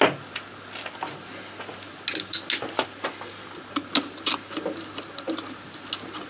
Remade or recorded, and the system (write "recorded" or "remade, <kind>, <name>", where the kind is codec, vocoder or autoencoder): recorded